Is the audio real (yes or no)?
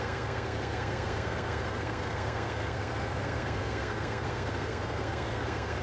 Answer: no